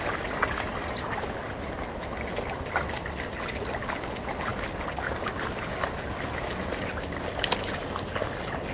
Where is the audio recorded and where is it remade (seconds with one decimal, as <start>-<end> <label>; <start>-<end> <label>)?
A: 0.0-8.7 recorded